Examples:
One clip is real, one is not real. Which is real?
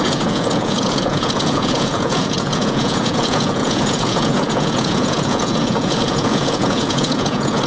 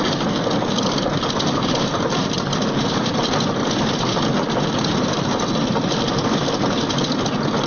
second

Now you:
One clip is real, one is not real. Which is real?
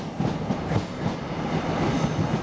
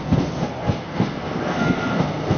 first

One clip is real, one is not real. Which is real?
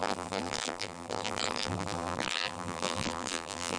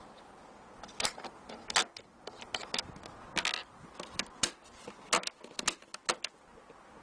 second